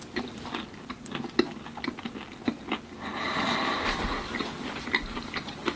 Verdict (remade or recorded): recorded